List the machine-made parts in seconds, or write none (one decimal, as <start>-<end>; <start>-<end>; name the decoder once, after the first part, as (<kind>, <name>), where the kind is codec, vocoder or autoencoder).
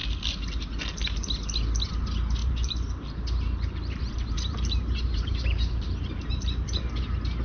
2.4-6.8 (vocoder, BigVGAN v2)